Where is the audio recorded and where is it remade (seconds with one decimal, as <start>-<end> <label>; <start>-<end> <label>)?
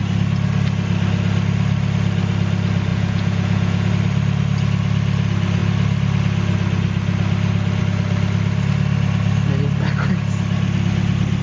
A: 0.0-2.9 recorded; 2.9-3.9 remade; 3.9-11.4 recorded